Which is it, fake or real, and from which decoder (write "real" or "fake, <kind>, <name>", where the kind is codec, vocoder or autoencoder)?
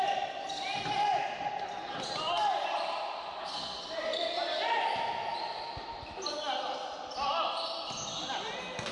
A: real